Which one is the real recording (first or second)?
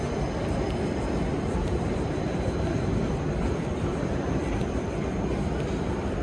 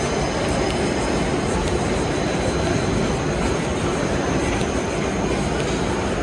second